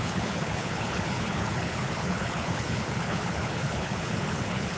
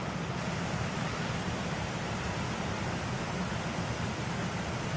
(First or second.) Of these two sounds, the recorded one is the second